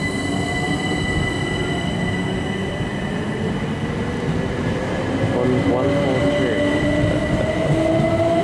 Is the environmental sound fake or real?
real